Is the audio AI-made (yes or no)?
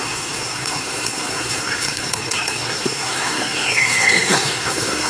yes